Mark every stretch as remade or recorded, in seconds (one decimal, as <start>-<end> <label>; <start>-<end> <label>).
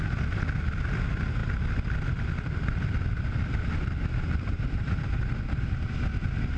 0.0-1.4 recorded; 1.4-5.4 remade; 5.4-6.6 recorded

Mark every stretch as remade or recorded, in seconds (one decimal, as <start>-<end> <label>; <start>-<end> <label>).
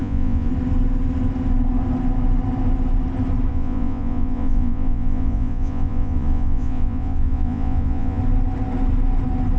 0.0-0.5 remade; 0.5-3.5 recorded; 3.5-8.2 remade; 8.2-9.6 recorded